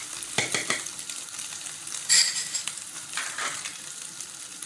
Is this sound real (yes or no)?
no